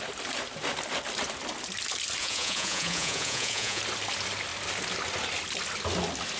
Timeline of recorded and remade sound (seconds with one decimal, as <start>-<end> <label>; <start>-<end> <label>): 0.0-2.2 recorded; 2.2-3.8 remade; 3.8-6.4 recorded